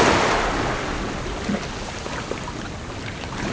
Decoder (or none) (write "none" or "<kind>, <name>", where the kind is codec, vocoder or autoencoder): none